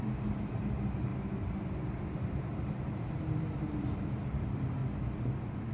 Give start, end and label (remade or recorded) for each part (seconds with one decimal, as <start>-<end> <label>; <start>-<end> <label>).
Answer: 0.0-1.1 remade; 1.1-1.9 recorded; 1.9-4.8 remade; 4.8-5.7 recorded

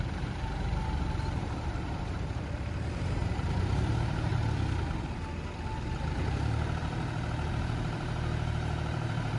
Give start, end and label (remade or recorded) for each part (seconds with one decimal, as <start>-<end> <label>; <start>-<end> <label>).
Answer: 0.0-4.3 remade; 4.3-7.5 recorded; 7.5-9.4 remade

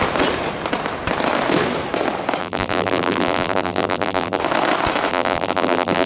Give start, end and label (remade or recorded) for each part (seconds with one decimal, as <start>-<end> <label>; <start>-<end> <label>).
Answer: 0.0-2.4 recorded; 2.4-4.4 remade; 4.4-5.1 recorded; 5.1-6.1 remade

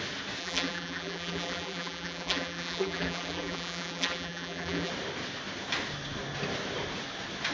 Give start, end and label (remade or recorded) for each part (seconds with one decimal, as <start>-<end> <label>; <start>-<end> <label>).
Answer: 0.0-0.4 recorded; 0.4-4.9 remade; 4.9-7.5 recorded

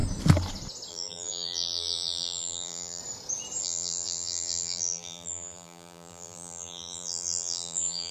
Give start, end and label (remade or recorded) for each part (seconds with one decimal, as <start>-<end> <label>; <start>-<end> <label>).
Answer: 0.0-0.9 recorded; 0.9-3.0 remade; 3.0-3.6 recorded; 3.6-8.1 remade

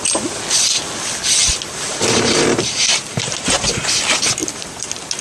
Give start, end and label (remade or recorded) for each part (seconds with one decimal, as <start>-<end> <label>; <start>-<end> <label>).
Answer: 0.0-1.9 recorded; 1.9-3.8 remade; 3.8-4.4 recorded; 4.4-5.2 remade